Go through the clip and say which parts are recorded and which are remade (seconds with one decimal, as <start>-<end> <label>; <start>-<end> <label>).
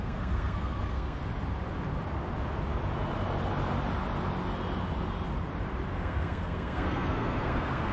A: 0.0-1.2 remade; 1.2-5.9 recorded; 5.9-7.9 remade